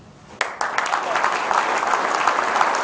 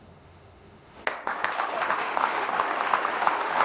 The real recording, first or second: first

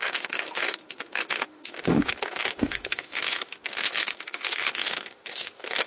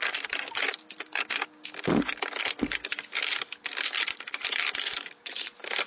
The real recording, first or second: second